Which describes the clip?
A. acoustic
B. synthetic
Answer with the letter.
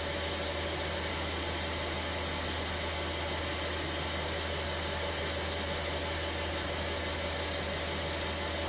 A